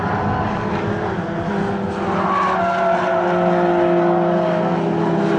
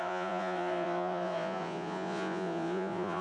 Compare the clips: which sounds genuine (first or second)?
first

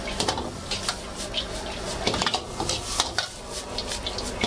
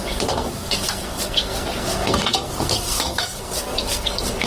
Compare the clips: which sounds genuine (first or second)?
first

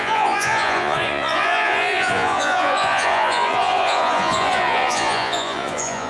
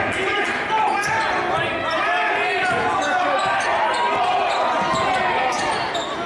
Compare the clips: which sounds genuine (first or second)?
second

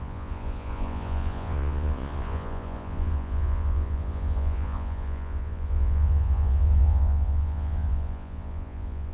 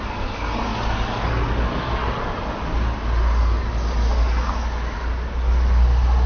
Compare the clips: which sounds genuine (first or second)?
second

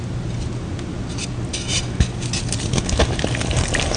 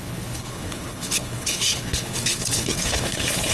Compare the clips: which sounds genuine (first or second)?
first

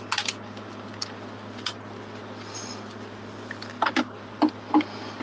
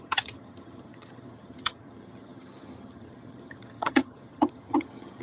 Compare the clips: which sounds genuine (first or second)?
first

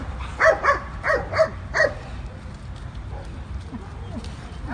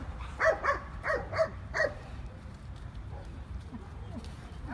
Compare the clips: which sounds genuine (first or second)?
first